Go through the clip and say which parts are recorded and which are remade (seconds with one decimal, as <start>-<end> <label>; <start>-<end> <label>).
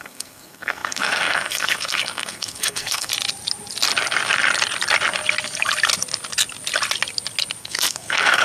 0.0-3.1 remade; 3.1-7.6 recorded; 7.6-8.4 remade